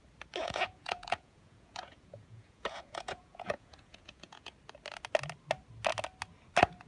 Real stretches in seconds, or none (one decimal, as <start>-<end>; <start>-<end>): 0.0-0.4; 4.5-6.9